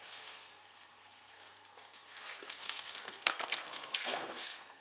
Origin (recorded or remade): remade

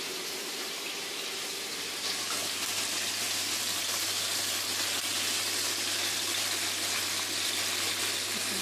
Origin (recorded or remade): recorded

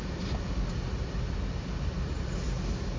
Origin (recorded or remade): recorded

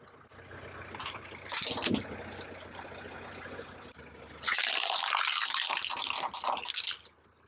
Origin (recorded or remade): remade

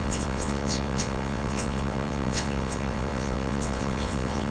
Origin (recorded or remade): remade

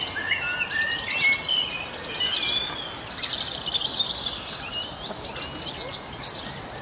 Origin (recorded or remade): recorded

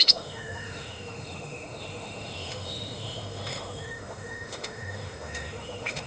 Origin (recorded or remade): remade